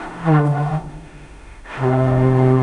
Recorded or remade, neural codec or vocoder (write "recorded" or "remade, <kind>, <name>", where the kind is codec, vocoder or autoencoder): remade, autoencoder, DAC-VAE